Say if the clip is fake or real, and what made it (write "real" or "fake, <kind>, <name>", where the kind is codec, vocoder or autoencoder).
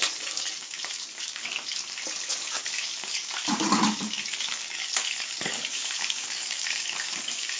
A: fake, codec, DAC